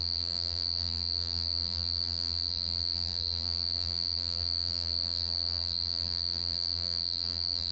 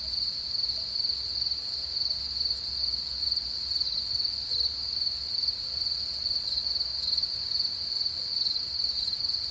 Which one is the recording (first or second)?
second